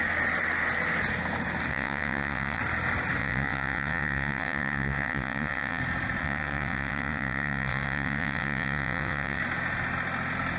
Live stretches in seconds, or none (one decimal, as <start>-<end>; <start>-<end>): 0.0-1.7; 2.6-3.2; 5.8-6.2; 9.4-10.6